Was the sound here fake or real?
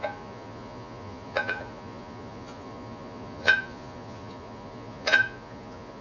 fake